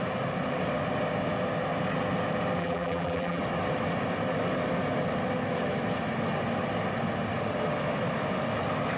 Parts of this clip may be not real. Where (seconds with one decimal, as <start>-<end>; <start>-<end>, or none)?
2.6-3.4

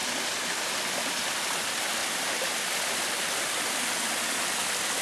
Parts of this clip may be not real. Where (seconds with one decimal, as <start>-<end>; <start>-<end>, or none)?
none

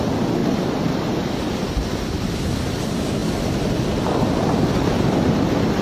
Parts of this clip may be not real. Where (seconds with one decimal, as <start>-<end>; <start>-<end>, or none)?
none

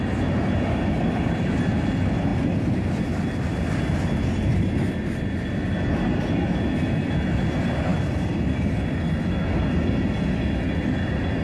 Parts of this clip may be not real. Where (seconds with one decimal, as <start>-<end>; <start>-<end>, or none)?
2.3-3.0

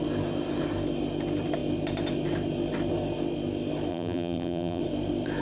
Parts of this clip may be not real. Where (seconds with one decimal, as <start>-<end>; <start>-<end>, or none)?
3.9-4.8

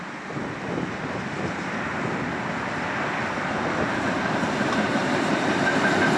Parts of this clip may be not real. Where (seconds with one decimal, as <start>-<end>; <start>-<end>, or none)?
5.0-5.6

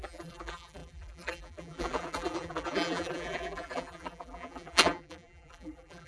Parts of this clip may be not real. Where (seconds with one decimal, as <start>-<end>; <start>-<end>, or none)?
0.0-6.1